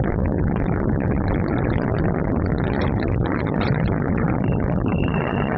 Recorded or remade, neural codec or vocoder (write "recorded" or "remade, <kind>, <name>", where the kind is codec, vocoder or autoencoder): remade, vocoder, Vocos